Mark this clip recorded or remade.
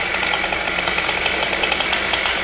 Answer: recorded